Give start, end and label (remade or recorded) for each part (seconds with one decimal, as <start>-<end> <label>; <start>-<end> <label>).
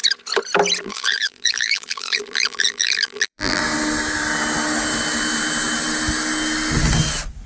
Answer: 0.0-0.8 recorded; 0.8-3.6 remade; 3.6-7.5 recorded